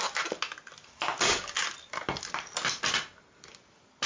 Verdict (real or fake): real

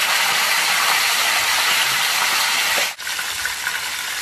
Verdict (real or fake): real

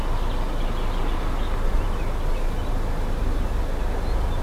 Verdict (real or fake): real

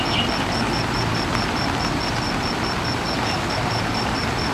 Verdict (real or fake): fake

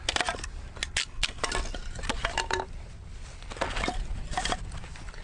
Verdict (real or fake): real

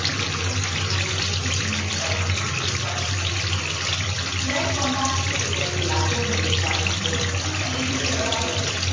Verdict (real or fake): real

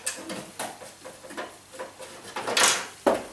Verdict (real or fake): real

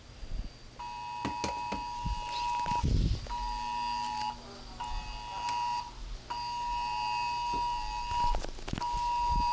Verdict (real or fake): real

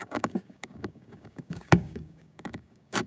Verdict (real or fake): fake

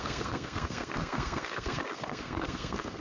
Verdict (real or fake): fake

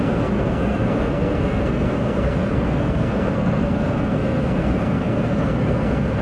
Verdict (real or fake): fake